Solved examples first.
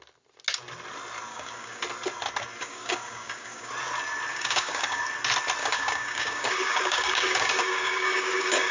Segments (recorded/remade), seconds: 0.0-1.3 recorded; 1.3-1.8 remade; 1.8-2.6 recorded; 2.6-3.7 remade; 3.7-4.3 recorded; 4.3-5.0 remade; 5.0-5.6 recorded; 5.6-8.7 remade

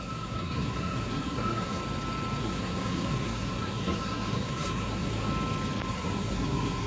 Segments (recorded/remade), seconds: 0.0-1.8 remade; 1.8-2.4 recorded; 2.4-5.3 remade; 5.3-5.9 recorded; 5.9-6.9 remade

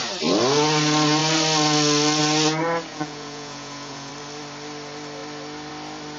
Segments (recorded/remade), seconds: 0.0-2.9 recorded; 2.9-4.1 remade; 4.1-6.2 recorded